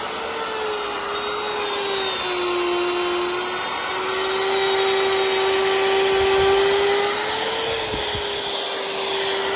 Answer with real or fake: real